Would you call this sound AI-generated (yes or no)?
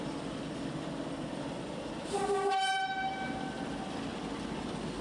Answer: no